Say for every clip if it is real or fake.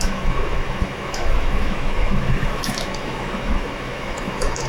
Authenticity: fake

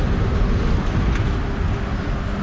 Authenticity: real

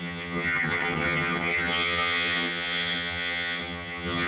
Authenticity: fake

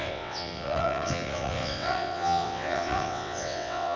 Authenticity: fake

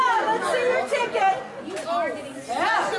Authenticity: real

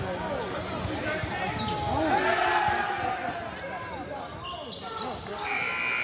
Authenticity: real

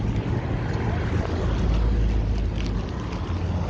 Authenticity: real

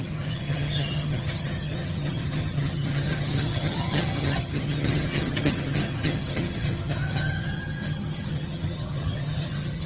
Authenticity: fake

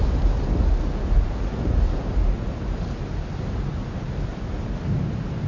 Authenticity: real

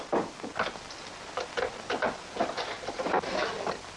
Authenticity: real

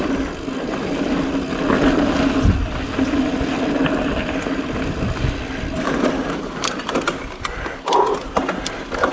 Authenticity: real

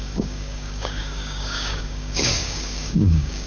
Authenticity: fake